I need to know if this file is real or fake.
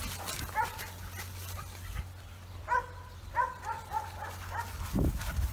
real